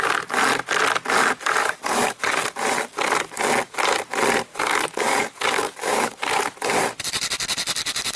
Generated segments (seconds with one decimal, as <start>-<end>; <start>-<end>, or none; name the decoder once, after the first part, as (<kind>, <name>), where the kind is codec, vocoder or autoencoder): 1.6-2.4 (codec, DAC); 4.5-6.4